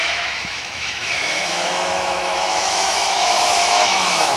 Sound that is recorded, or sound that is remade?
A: remade